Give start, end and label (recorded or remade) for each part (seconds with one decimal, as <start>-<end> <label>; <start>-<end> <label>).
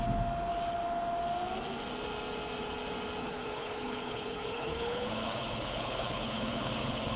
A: 0.0-3.2 recorded; 3.2-7.2 remade